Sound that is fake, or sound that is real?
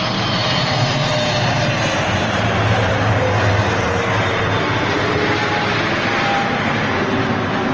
real